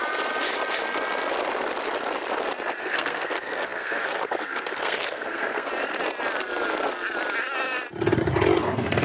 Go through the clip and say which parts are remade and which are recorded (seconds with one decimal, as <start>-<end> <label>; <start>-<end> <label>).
0.0-2.8 recorded; 2.8-5.7 remade; 5.7-8.6 recorded; 8.6-9.0 remade